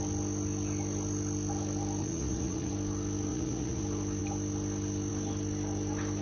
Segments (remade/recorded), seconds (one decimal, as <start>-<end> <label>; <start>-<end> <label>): 0.0-2.0 recorded; 2.0-2.7 remade; 2.7-3.3 recorded; 3.3-3.8 remade; 3.8-6.2 recorded